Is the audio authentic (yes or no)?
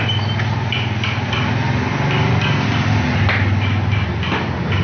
yes